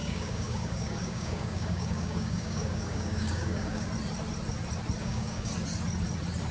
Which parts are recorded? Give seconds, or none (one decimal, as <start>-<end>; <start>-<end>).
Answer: 3.9-5.0; 5.5-6.5